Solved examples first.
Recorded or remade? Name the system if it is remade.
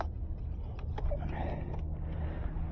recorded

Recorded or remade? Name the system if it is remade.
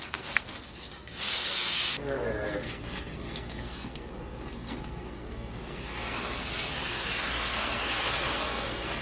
remade, codec, SNAC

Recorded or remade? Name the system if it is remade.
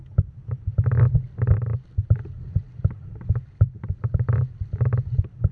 recorded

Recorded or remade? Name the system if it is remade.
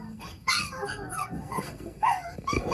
remade, codec, SNAC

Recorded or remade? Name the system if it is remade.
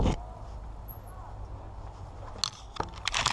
recorded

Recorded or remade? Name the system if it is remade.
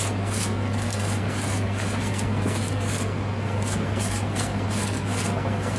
remade, codec, SNAC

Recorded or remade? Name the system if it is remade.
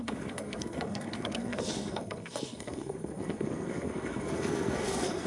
remade, codec, SNAC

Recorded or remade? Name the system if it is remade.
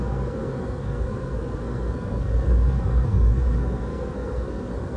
remade, codec, SNAC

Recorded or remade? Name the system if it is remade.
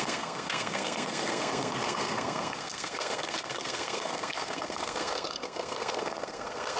remade, codec, SNAC